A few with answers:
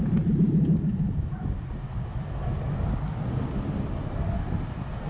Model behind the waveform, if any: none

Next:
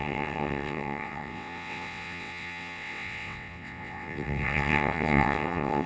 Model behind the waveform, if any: vocoder, WaveNeXt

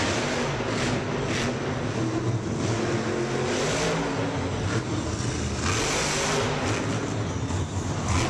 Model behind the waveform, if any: none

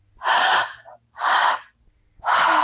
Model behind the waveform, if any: none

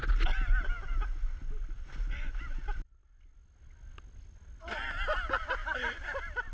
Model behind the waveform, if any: none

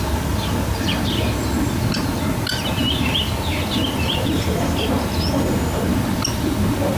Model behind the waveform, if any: none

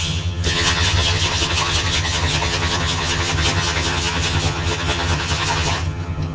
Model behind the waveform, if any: vocoder, HiFi-GAN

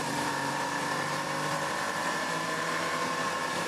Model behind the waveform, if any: vocoder, BigVGAN v2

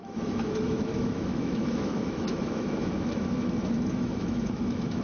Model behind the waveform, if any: autoencoder, DAC-VAE